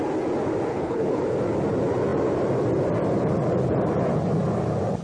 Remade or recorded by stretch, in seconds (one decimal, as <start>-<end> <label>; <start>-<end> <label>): 0.0-0.7 recorded; 0.7-1.2 remade; 1.2-5.0 recorded